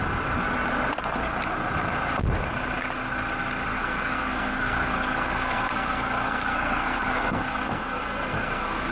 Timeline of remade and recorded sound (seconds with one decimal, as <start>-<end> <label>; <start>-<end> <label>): 0.0-3.7 recorded; 3.7-8.9 remade